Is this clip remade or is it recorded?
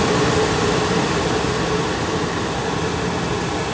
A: recorded